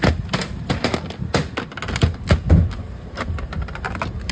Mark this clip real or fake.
real